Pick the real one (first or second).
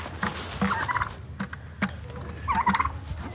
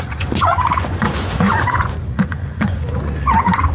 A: first